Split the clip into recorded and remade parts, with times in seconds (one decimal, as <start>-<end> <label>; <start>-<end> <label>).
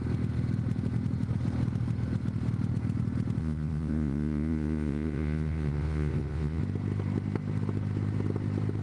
0.0-3.4 recorded; 3.4-6.6 remade; 6.6-8.8 recorded